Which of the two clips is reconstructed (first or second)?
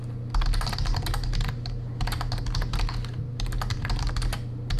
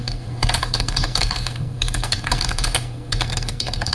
second